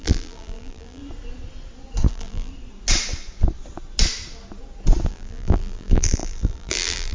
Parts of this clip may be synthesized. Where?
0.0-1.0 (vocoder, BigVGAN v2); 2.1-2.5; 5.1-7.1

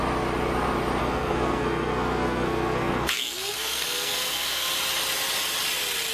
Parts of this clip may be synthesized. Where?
1.0-4.7 (codec, SNAC)

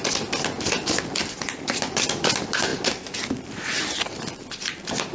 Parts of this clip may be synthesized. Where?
none